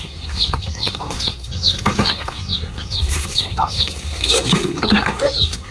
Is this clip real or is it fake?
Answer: fake